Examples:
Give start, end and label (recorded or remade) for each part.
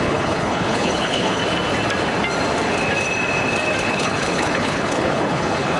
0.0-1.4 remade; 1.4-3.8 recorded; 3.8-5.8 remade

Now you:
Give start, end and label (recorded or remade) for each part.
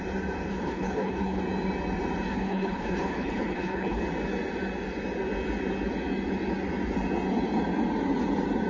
0.0-0.5 recorded; 0.5-1.4 remade; 1.4-2.3 recorded; 2.3-4.0 remade; 4.0-8.7 recorded